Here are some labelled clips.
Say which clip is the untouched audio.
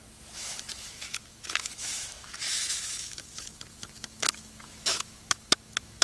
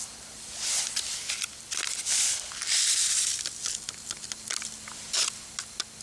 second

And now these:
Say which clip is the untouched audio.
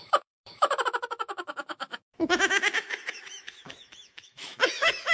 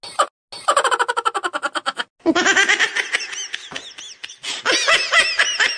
second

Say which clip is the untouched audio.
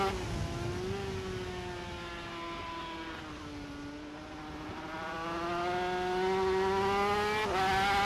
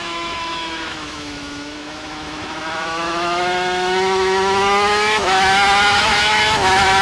first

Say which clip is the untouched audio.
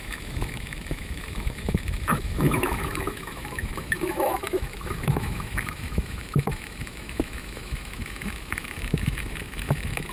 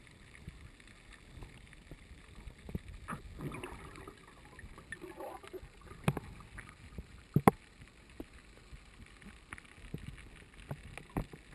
second